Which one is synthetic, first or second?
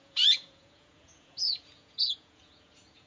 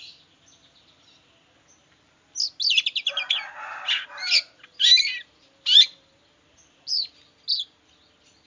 first